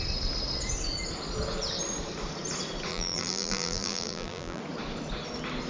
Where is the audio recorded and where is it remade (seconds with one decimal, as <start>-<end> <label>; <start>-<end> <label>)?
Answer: 0.0-2.9 recorded; 2.9-4.6 remade; 4.6-5.7 recorded